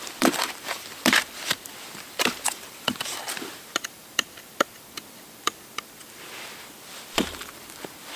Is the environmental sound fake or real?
fake